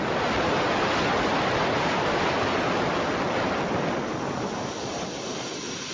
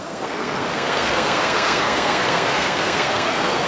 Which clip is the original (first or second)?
first